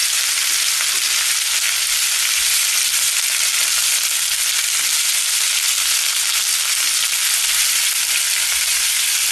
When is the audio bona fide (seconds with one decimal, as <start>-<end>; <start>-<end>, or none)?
0.0-9.3